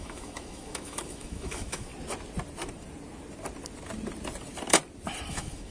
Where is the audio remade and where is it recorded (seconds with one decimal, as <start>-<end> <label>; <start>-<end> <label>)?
0.0-1.9 remade; 1.9-5.3 recorded; 5.3-5.7 remade